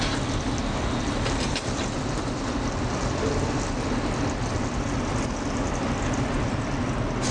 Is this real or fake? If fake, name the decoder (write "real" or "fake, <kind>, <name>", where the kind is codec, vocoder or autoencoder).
real